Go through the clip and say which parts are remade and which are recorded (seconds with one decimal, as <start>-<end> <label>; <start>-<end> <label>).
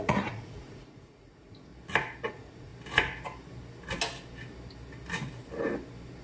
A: 0.0-1.7 remade; 1.7-2.3 recorded; 2.3-2.7 remade; 2.7-6.2 recorded